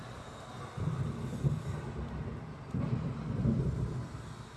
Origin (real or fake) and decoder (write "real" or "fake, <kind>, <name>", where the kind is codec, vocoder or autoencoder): real